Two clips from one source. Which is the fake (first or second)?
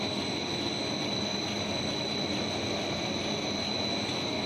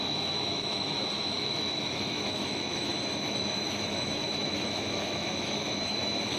second